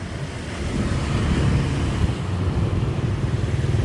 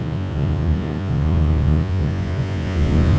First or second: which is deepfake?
second